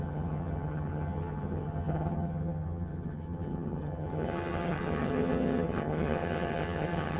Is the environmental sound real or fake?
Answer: fake